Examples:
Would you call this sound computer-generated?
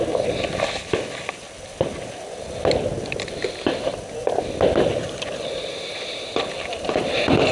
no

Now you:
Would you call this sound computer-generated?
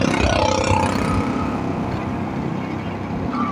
no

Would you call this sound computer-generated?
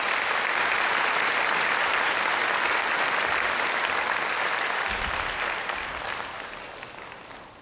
no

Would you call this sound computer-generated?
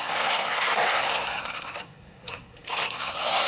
yes